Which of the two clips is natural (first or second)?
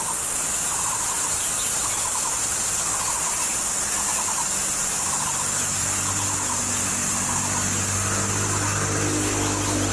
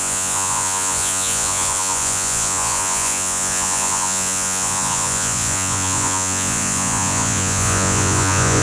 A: first